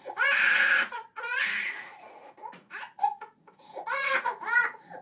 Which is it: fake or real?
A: fake